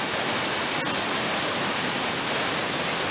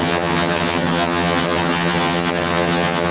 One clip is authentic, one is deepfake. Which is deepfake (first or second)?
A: second